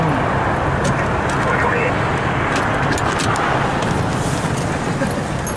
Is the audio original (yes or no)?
yes